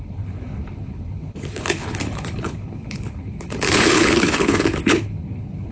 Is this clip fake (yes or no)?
yes